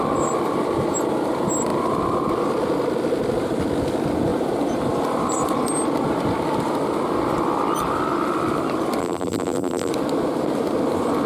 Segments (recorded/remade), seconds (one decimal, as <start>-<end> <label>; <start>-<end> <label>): 0.0-9.0 recorded; 9.0-9.9 remade; 9.9-11.3 recorded